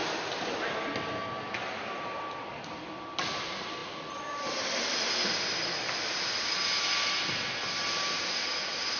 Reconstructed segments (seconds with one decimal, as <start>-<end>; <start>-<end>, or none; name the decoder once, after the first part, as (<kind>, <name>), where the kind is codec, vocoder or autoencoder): none